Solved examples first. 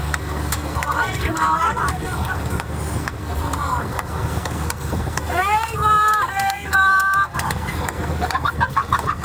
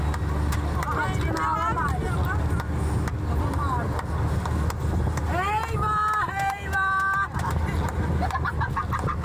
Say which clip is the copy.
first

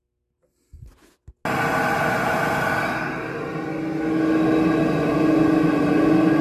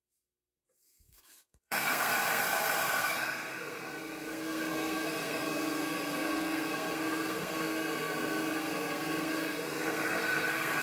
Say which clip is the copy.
second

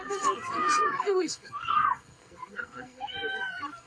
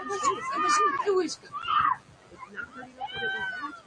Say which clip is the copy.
first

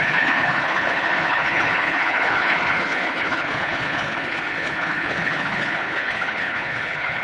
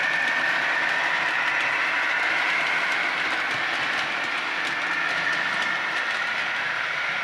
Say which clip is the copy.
first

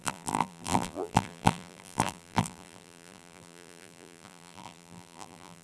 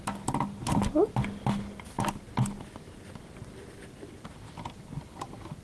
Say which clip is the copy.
first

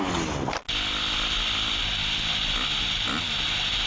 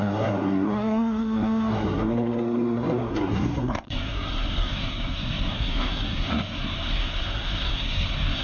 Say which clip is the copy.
second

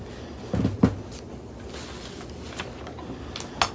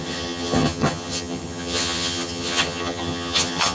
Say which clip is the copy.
second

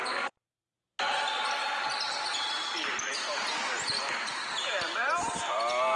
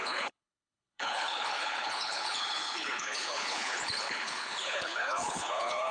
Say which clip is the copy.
second